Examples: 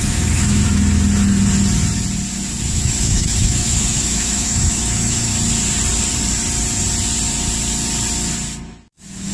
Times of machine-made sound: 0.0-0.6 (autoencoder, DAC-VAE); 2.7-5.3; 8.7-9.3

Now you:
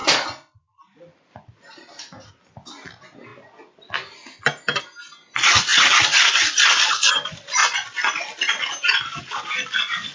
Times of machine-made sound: 0.0-2.3 (vocoder, BigVGAN v2); 7.6-8.7